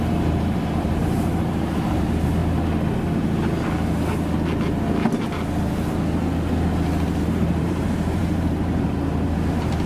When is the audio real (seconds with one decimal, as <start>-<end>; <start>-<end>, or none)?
2.4-7.2